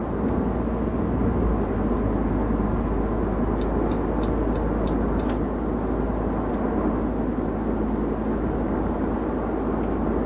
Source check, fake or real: real